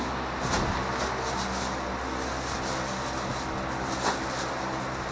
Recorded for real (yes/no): yes